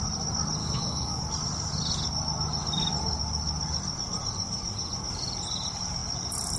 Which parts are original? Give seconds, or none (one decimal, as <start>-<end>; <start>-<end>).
0.0-0.6; 1.2-6.6